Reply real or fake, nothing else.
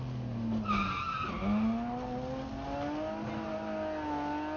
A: real